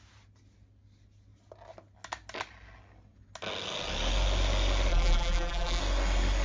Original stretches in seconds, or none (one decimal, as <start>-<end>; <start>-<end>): 0.0-4.9; 5.8-6.4